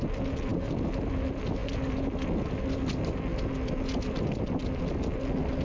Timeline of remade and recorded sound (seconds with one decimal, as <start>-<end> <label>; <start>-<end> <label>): 0.0-5.6 recorded